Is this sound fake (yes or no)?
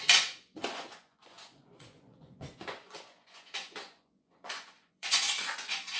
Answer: yes